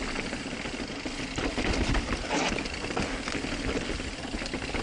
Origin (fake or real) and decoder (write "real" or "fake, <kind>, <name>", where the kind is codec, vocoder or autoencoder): real